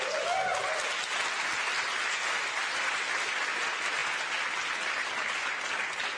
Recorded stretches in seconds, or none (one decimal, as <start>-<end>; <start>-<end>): 0.0-6.2